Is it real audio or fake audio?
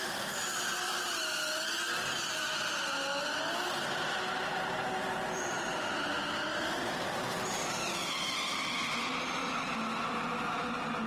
real